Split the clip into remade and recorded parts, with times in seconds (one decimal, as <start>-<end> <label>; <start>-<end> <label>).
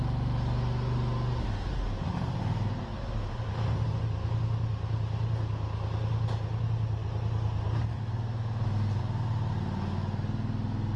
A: 0.0-11.0 recorded